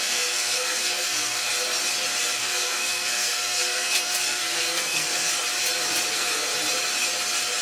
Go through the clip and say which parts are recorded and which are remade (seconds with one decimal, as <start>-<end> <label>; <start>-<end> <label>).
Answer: 0.0-1.5 remade; 1.5-2.4 recorded; 2.4-5.3 remade; 5.3-6.1 recorded; 6.1-6.5 remade; 6.5-7.6 recorded

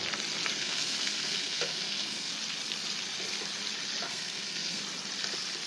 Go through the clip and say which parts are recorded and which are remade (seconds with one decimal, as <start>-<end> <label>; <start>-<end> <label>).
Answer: 0.0-0.5 recorded; 0.5-2.3 remade; 2.3-4.1 recorded; 4.1-4.8 remade; 4.8-5.7 recorded

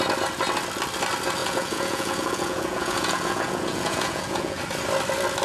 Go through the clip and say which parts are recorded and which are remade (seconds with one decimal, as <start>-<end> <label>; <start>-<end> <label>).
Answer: 0.0-1.4 recorded; 1.4-4.6 remade; 4.6-5.4 recorded

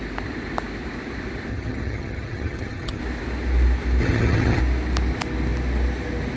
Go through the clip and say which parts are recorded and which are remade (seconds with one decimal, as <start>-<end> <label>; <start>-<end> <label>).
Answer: 0.0-1.5 recorded; 1.5-3.0 remade; 3.0-4.0 recorded; 4.0-4.6 remade; 4.6-6.4 recorded

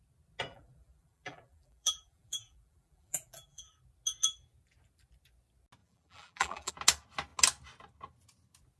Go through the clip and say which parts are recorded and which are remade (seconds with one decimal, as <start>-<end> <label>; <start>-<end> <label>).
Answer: 0.0-0.5 recorded; 0.5-3.7 remade; 3.7-5.8 recorded; 5.8-6.7 remade; 6.7-8.8 recorded

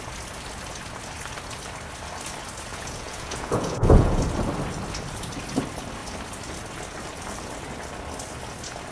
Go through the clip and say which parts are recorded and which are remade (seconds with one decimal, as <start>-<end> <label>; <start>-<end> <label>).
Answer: 0.0-2.7 recorded; 2.7-4.2 remade; 4.2-8.9 recorded

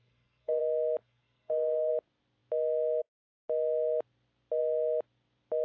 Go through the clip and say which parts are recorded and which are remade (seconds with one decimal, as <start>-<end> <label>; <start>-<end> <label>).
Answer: 0.0-0.6 remade; 0.6-1.0 recorded; 1.0-1.9 remade; 1.9-5.6 recorded